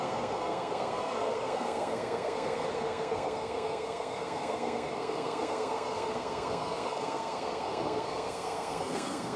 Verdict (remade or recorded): remade